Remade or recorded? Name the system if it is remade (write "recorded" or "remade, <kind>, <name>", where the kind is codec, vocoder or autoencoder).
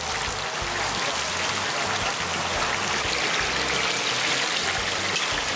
recorded